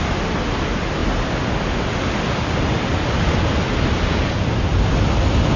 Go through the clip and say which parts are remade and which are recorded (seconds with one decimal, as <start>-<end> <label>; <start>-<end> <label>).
0.0-5.6 recorded